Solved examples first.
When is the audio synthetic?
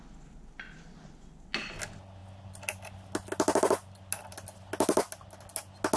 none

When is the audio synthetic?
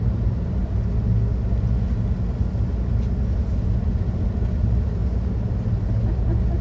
0.0-0.6 (vocoder, BigVGAN v2); 3.6-5.0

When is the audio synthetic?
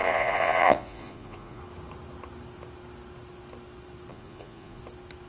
0.0-1.6 (vocoder, Vocos); 4.1-4.8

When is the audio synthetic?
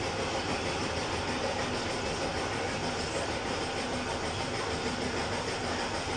none